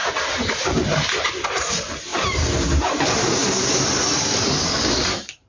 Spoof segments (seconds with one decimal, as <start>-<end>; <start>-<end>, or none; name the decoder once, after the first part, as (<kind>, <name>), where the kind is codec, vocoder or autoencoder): 0.0-5.5 (vocoder, BigVGAN v2)